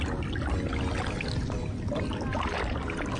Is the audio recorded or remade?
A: recorded